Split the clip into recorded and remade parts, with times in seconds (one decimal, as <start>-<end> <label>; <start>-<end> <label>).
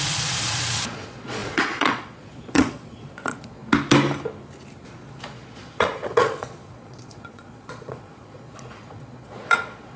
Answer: 0.0-3.6 remade; 3.6-4.9 recorded; 4.9-10.0 remade